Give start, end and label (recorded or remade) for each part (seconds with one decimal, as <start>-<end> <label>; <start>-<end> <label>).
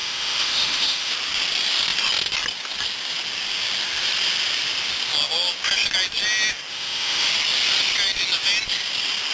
0.0-1.1 remade; 1.1-6.7 recorded; 6.7-7.3 remade; 7.3-9.3 recorded